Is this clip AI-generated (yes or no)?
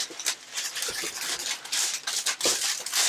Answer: no